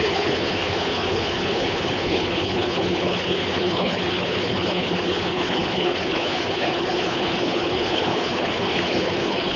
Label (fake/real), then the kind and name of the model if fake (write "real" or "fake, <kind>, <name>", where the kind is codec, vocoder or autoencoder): fake, codec, HILCodec